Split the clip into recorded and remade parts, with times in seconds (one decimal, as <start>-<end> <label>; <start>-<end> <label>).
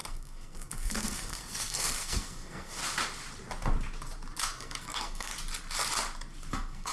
0.0-2.8 remade; 2.8-4.4 recorded; 4.4-5.3 remade; 5.3-6.5 recorded; 6.5-6.9 remade